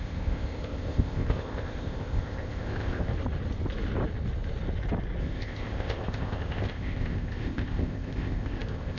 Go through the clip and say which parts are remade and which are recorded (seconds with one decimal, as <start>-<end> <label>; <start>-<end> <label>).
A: 0.0-3.1 remade; 3.1-5.2 recorded; 5.2-9.0 remade